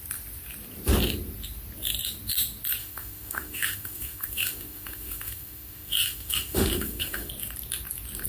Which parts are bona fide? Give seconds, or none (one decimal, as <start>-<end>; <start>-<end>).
0.0-2.8; 7.3-8.3